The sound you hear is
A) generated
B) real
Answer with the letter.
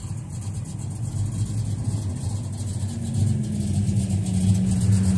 B